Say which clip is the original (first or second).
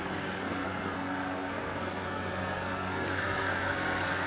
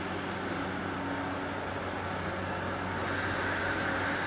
second